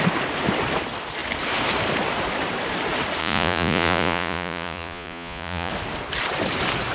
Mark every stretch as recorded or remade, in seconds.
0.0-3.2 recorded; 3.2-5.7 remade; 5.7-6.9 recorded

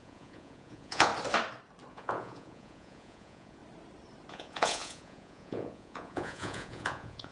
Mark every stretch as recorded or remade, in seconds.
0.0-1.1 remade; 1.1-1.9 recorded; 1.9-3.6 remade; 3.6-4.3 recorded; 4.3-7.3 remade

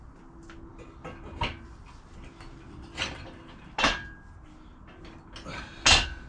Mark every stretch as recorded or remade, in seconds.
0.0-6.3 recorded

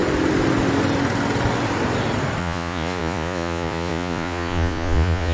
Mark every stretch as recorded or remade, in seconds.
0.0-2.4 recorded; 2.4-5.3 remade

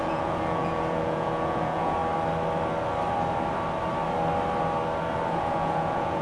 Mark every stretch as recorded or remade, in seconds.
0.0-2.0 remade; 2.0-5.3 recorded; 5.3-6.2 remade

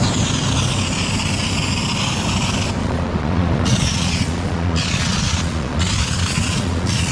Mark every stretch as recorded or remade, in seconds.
0.0-2.8 recorded; 2.8-7.1 remade

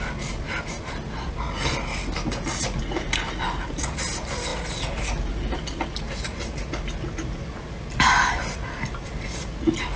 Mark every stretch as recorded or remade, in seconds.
0.0-10.0 recorded